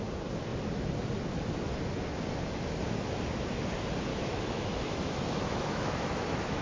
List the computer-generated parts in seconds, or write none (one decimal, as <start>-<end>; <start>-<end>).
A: 4.1-6.6